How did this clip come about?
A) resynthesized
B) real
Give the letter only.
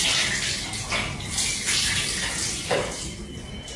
B